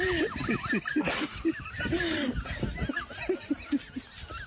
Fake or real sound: real